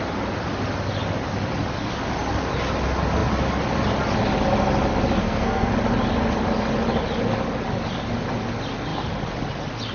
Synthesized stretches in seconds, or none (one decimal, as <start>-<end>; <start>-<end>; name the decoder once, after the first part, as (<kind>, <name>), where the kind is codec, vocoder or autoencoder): 5.2-5.7 (codec, SNAC)